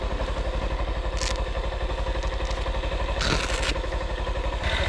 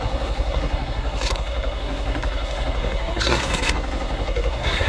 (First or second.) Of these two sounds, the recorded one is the first